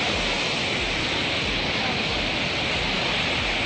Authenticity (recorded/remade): recorded